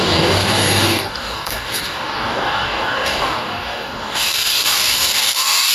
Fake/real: fake